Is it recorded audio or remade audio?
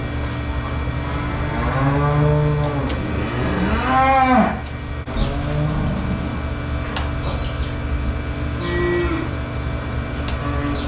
recorded